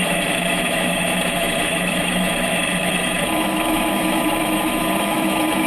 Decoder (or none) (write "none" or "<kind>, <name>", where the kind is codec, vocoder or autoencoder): autoencoder, DAC-VAE